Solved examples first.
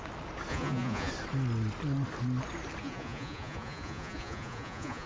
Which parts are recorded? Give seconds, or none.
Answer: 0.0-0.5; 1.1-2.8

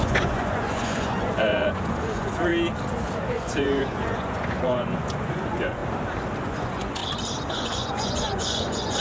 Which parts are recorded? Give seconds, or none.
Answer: 2.5-3.2; 5.8-6.4; 7.0-7.5

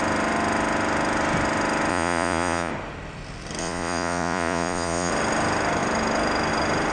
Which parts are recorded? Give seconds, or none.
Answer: 0.0-1.9; 2.7-3.6; 5.1-6.9

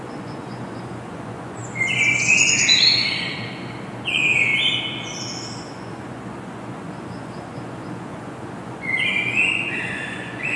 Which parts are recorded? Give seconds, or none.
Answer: 4.5-5.7

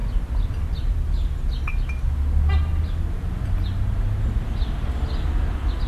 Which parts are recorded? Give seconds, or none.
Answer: 0.0-5.9

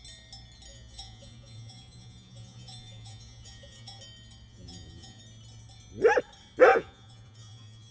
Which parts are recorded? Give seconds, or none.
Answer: 0.0-0.7; 4.0-4.5; 5.2-6.7